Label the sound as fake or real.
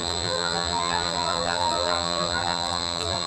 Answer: fake